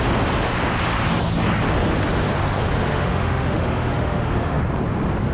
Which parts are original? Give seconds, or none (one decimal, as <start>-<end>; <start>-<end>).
0.0-2.9; 4.6-5.3